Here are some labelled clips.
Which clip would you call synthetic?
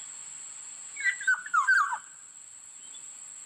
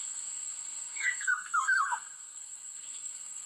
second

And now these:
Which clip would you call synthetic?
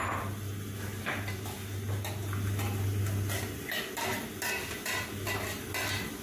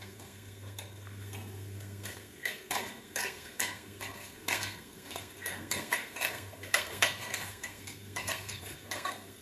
second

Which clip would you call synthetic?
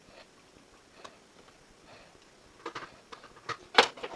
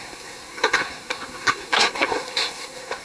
second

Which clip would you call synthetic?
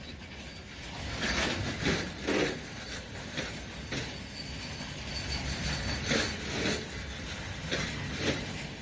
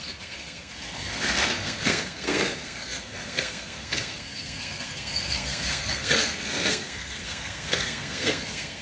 second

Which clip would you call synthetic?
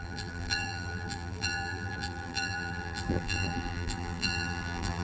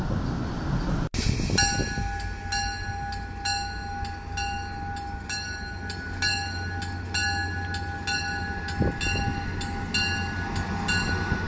first